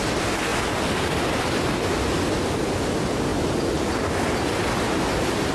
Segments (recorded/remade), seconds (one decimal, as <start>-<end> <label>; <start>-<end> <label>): 0.0-5.5 recorded